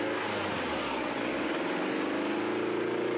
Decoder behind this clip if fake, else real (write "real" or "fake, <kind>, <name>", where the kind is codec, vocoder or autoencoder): real